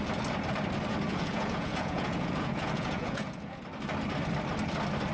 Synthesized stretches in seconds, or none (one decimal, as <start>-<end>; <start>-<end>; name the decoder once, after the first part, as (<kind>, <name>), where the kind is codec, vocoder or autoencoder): 1.1-3.6 (vocoder, Vocos)